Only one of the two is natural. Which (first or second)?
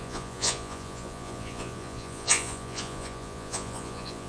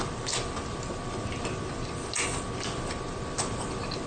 second